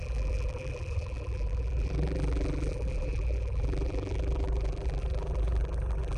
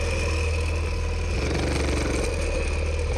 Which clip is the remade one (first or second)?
first